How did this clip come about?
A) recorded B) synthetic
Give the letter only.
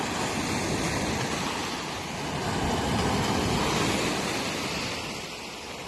A